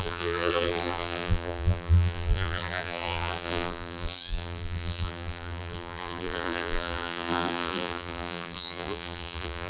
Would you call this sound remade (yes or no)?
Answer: yes